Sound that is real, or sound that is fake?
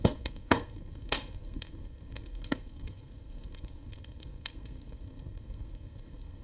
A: fake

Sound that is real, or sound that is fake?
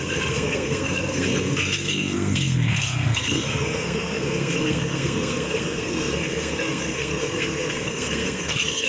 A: fake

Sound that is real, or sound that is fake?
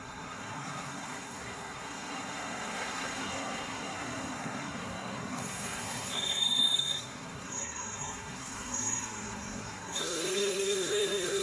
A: fake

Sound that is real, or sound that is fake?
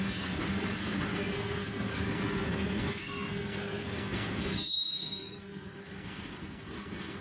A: fake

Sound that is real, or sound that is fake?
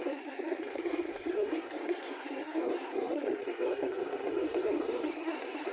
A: fake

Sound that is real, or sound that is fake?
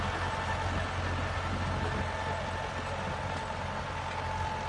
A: real